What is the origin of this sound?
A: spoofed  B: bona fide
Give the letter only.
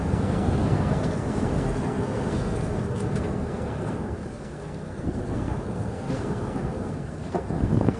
A